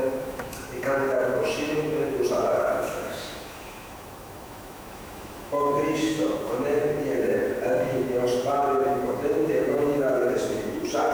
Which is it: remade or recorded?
remade